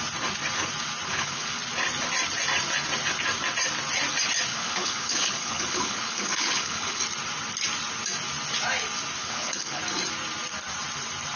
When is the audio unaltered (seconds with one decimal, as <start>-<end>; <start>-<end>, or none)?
0.0-1.1; 1.6-4.5; 7.0-9.2; 9.8-11.4